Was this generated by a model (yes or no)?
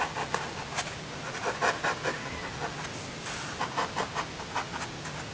no